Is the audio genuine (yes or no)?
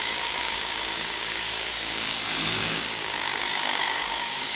no